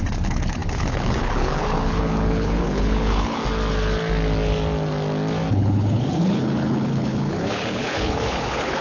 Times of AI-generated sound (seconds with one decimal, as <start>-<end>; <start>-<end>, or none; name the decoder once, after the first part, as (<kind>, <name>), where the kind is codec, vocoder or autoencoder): 0.0-3.4 (codec, HILCodec); 5.5-8.8